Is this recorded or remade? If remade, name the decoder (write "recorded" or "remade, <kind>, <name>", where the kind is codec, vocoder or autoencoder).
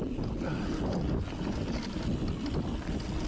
recorded